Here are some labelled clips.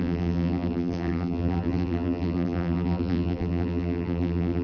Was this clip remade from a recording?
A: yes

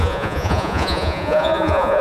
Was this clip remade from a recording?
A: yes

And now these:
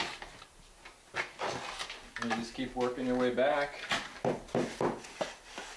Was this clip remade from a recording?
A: no